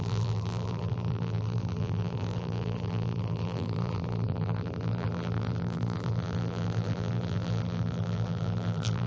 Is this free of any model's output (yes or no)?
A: no